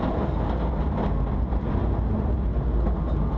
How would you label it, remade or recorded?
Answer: recorded